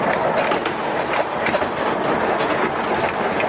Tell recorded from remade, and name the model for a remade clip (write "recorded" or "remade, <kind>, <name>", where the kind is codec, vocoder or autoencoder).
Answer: recorded